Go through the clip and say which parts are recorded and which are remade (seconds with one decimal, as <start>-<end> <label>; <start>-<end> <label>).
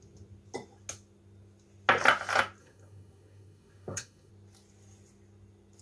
0.0-2.6 recorded; 2.6-4.3 remade; 4.3-5.8 recorded